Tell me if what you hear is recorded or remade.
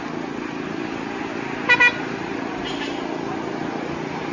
recorded